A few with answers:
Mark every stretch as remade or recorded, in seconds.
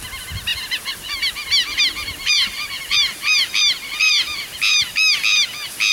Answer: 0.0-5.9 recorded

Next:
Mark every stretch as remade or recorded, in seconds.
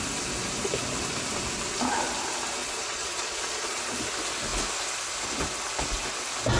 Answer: 0.0-2.6 recorded; 2.6-4.0 remade; 4.0-6.6 recorded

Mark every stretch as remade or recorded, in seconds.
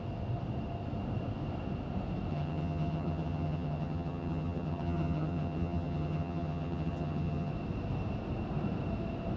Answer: 0.0-2.3 recorded; 2.3-7.5 remade; 7.5-9.4 recorded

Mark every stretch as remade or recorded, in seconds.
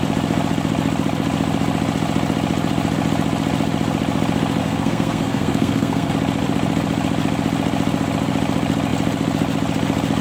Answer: 0.0-4.6 recorded; 4.6-6.1 remade; 6.1-10.2 recorded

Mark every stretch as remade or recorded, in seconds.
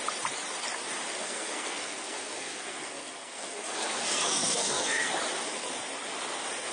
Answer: 0.0-1.2 recorded; 1.2-5.1 remade; 5.1-6.7 recorded